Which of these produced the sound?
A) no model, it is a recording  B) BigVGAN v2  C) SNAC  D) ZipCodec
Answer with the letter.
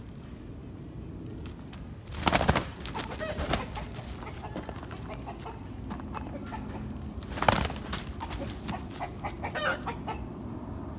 A